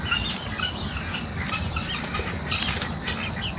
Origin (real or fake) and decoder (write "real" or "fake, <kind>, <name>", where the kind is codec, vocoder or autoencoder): real